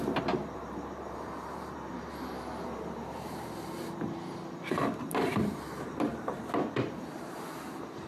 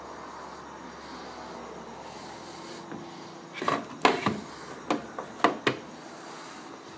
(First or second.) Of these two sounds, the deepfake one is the first